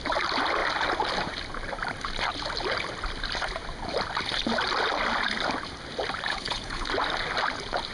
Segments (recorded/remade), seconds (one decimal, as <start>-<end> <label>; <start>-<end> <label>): 0.0-6.3 recorded; 6.3-6.9 remade; 6.9-7.9 recorded